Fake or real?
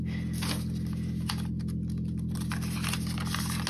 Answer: real